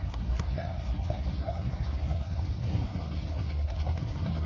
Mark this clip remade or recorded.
remade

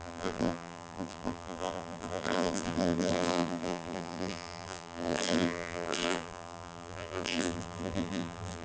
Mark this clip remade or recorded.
remade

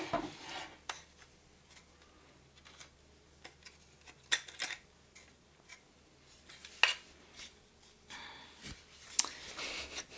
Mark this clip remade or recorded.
recorded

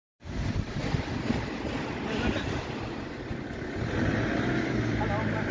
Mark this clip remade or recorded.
recorded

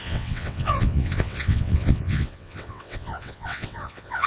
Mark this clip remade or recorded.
remade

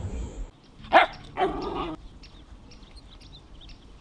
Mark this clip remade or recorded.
remade